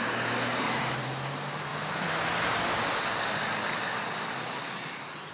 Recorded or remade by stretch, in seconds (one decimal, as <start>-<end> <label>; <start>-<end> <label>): 0.0-1.7 remade; 1.7-5.3 recorded

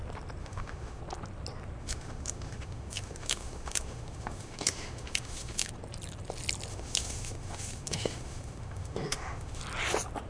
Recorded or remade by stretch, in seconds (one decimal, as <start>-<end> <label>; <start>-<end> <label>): 0.0-0.4 recorded; 0.4-1.0 remade; 1.0-1.8 recorded; 1.8-5.7 remade; 5.7-6.7 recorded; 6.7-9.6 remade; 9.6-10.3 recorded

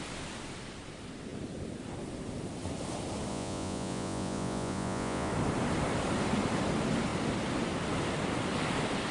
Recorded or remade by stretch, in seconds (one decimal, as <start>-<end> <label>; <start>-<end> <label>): 0.0-3.3 recorded; 3.3-5.3 remade; 5.3-9.1 recorded

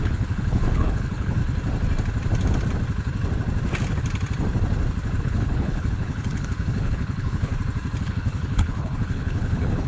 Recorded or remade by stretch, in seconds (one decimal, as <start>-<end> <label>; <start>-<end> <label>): 0.0-1.4 remade; 1.4-5.2 recorded; 5.2-7.5 remade; 7.5-8.0 recorded; 8.0-9.9 remade